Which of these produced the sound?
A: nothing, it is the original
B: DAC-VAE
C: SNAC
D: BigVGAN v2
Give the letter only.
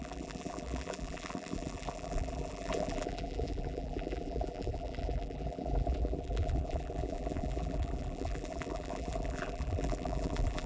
D